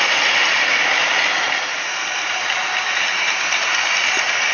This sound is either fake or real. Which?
real